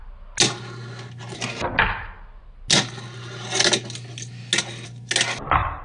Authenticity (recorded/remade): recorded